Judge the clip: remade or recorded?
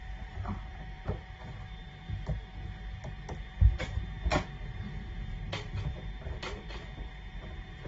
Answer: recorded